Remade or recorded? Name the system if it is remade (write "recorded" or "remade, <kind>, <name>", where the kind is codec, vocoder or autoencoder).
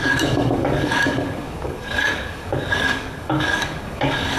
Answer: remade, codec, DAC